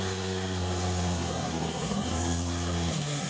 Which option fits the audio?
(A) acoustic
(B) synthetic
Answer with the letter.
B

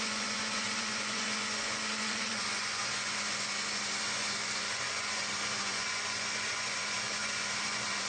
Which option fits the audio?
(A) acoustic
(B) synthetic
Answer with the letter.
B